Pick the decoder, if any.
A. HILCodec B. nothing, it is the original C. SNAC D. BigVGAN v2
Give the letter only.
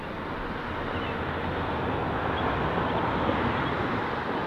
B